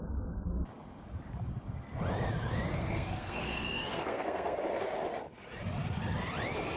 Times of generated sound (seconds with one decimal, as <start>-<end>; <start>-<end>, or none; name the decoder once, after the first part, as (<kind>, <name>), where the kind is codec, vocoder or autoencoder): 2.7-4.6 (codec, SNAC)